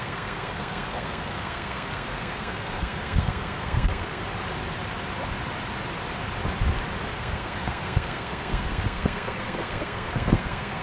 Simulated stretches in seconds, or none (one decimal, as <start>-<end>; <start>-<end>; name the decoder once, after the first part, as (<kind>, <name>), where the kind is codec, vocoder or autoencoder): 0.0-4.2 (codec, SNAC); 7.1-10.8